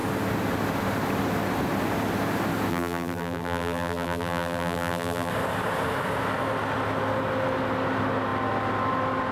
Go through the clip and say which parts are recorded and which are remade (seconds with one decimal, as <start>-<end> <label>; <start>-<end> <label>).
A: 0.0-2.7 recorded; 2.7-5.3 remade; 5.3-9.3 recorded